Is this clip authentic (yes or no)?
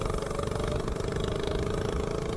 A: yes